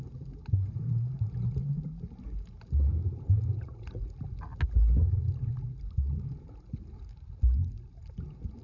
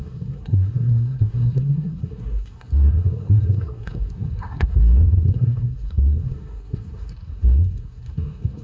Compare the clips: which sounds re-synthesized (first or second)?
second